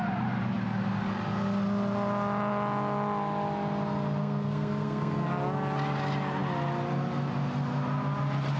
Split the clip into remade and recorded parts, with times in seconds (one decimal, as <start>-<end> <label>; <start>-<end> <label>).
0.0-4.2 recorded; 4.2-5.3 remade; 5.3-8.6 recorded